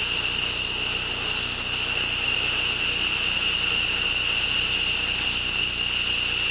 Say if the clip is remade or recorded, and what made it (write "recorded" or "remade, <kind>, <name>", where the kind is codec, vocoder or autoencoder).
recorded